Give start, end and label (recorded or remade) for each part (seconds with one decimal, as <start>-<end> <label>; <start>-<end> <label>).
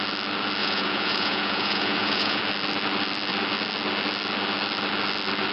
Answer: 0.0-0.6 recorded; 0.6-2.4 remade; 2.4-5.5 recorded